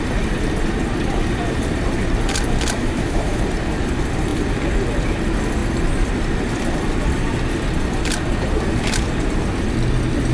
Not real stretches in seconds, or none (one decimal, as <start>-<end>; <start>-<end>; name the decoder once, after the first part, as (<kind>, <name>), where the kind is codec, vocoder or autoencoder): 2.8-3.4 (autoencoder, DAC-VAE)